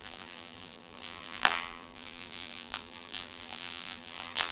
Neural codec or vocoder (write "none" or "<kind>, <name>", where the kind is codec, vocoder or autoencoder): vocoder, BigVGAN v2